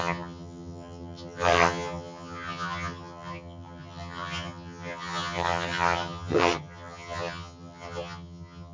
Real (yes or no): no